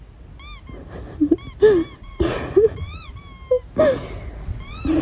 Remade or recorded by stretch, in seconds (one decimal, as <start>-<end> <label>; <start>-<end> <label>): 0.0-2.0 recorded; 2.0-3.2 remade; 3.2-4.3 recorded; 4.3-5.0 remade